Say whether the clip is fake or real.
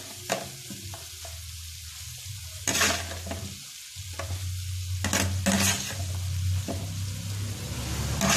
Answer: real